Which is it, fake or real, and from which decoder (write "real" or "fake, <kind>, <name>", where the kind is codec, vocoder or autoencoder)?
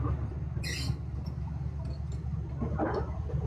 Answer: real